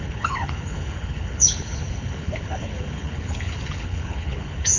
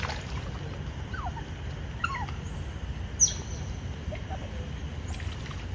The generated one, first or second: first